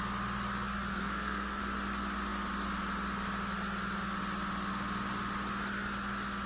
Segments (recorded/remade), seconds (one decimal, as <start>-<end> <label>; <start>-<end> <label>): 0.0-0.9 recorded; 0.9-1.6 remade; 1.6-6.5 recorded